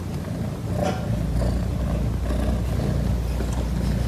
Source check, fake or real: real